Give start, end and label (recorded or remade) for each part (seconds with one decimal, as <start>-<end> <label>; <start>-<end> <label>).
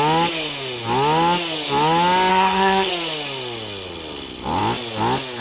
0.0-2.3 recorded; 2.3-2.9 remade; 2.9-5.4 recorded